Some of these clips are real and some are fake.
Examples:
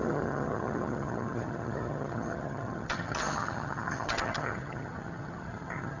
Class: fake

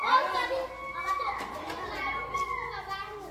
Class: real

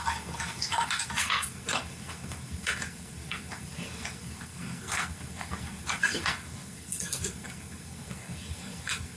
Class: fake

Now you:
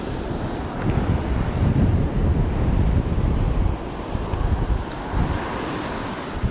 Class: real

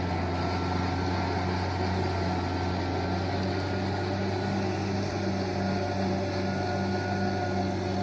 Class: real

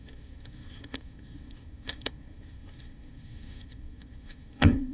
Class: fake